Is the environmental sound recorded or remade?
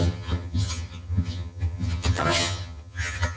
remade